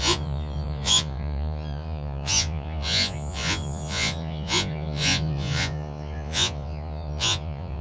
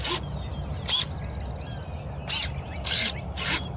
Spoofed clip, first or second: first